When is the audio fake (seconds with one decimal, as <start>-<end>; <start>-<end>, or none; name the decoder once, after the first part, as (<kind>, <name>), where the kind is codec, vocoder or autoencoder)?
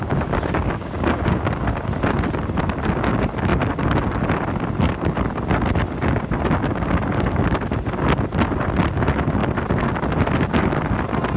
0.0-1.4 (codec, DAC)